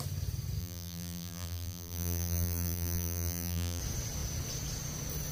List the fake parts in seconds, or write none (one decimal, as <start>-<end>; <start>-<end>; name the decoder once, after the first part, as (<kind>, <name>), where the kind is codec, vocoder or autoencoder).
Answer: 0.6-3.8 (vocoder, BigVGAN v2)

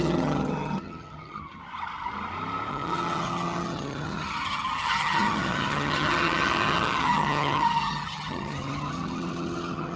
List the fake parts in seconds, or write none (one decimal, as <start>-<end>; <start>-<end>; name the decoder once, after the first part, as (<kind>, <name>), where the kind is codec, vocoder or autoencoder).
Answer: 0.0-1.6 (vocoder, HiFi-GAN); 2.7-10.0

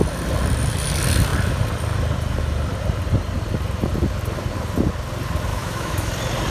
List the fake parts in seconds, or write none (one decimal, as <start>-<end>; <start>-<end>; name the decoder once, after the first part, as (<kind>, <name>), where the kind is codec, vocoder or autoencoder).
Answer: 5.5-6.1 (autoencoder, DAC-VAE)

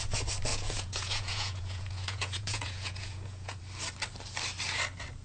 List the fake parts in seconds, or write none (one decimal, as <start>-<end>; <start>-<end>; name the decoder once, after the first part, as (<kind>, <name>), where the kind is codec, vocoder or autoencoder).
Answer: 0.5-3.6 (vocoder, Vocos)

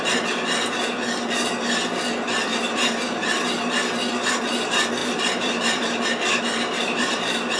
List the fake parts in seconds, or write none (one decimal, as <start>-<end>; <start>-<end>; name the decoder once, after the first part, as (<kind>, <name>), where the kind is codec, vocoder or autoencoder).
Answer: 2.5-3.5 (vocoder, BigVGAN v2); 5.0-7.6

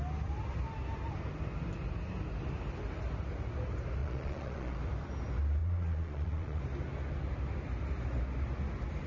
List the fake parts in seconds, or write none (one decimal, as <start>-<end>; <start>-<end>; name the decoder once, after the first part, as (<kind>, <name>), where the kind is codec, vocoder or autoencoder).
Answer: 4.0-4.8 (vocoder, Vocos); 5.6-6.6

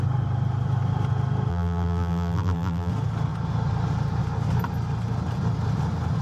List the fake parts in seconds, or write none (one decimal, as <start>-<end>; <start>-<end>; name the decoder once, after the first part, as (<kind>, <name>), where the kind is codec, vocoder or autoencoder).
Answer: 1.5-2.9 (vocoder, BigVGAN v2)

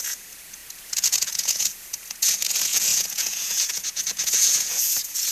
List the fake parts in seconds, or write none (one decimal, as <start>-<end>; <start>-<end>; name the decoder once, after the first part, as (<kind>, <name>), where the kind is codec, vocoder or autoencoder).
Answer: 0.0-5.3 (vocoder, Vocos)